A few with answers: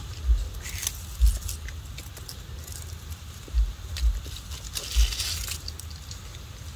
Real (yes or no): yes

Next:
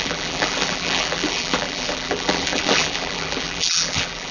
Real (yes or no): no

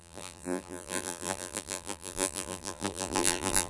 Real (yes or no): no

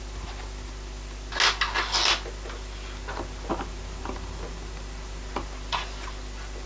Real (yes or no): yes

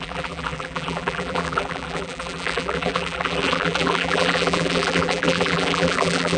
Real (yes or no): no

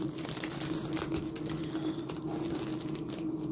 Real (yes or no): yes